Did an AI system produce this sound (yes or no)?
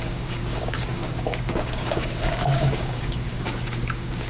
yes